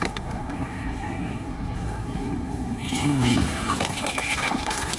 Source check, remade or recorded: remade